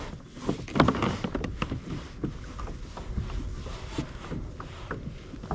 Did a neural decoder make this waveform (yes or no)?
no